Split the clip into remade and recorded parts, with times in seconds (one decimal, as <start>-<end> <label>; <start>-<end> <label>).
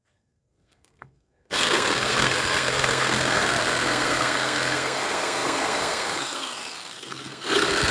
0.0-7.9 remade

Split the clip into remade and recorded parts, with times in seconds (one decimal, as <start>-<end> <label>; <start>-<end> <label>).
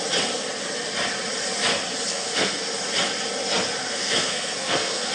0.0-2.1 recorded; 2.1-2.6 remade; 2.6-3.8 recorded; 3.8-5.1 remade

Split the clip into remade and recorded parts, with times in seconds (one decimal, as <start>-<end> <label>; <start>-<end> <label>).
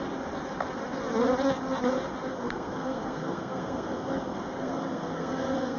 0.0-2.3 recorded; 2.3-5.8 remade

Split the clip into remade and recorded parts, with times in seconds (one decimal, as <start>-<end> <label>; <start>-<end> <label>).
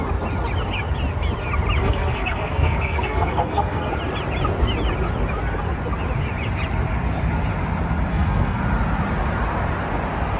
0.0-1.8 recorded; 1.8-3.9 remade; 3.9-8.1 recorded; 8.1-8.6 remade; 8.6-10.4 recorded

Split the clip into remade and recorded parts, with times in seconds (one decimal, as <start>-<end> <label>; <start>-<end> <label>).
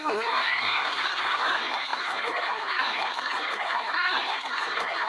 0.0-5.1 remade